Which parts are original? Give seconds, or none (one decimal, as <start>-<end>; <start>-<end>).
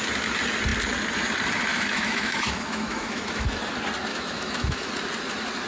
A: 0.0-1.7; 3.6-4.1; 4.9-5.7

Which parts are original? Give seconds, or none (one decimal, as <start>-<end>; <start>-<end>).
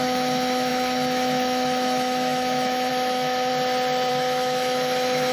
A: 3.5-4.1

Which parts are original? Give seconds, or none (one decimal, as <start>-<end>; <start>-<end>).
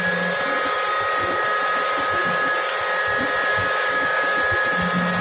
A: 0.0-3.5; 4.4-5.2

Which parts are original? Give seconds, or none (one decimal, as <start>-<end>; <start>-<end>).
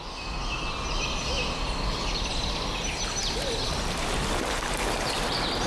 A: 0.0-5.7